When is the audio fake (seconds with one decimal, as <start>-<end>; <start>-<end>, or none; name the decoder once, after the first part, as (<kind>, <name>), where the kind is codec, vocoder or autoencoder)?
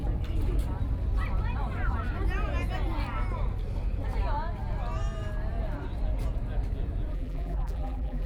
7.1-8.3 (vocoder, BigVGAN v2)